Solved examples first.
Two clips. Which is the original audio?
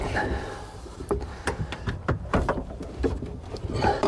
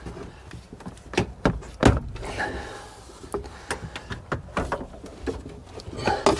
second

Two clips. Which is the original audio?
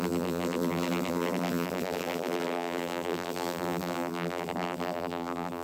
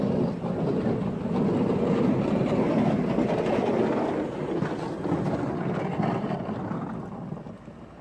second